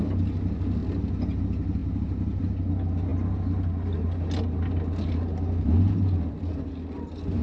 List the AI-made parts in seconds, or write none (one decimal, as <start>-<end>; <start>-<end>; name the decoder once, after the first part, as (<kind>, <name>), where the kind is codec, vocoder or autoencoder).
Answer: 1.8-2.4 (vocoder, BigVGAN v2)